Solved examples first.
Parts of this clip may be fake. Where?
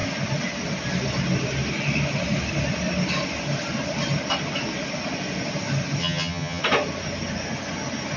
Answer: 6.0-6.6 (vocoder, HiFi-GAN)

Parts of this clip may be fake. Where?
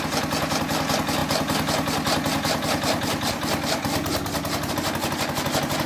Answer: none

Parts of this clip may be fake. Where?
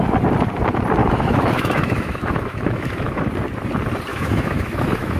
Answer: 1.0-3.2 (autoencoder, DAC-VAE); 4.1-5.2